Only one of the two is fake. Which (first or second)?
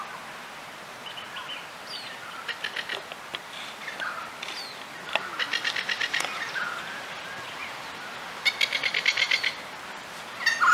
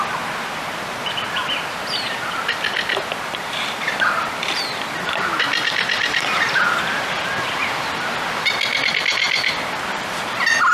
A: second